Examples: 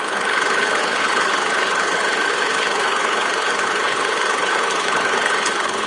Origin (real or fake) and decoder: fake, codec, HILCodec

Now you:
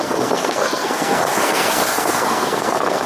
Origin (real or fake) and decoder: fake, codec, SNAC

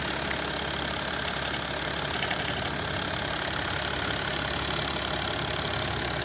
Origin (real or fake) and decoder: real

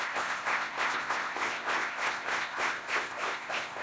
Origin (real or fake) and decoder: fake, codec, ZipCodec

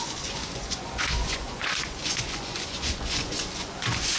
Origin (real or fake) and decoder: fake, vocoder, Vocos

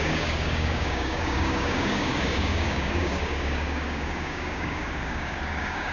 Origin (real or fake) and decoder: fake, codec, DAC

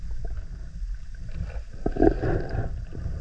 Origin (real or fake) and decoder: real